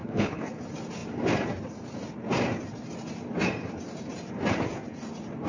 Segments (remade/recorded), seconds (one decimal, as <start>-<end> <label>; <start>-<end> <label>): 0.0-0.6 remade; 0.6-5.5 recorded